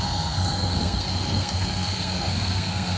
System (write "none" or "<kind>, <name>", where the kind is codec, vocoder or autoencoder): codec, SNAC